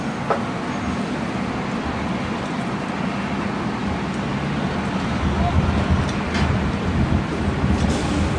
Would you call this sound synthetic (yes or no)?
no